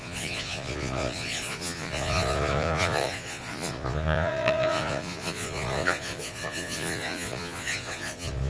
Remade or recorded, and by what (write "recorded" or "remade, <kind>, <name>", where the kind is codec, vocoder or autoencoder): remade, vocoder, Vocos